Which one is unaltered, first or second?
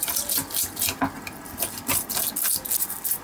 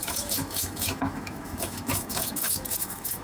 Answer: first